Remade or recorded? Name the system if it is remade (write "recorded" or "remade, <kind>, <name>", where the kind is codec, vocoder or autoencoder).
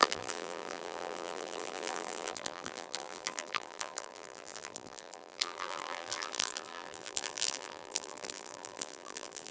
remade, vocoder, BigVGAN v2